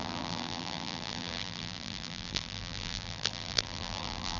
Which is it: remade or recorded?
remade